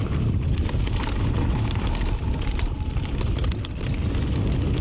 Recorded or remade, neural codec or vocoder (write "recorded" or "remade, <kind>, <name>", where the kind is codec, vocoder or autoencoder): recorded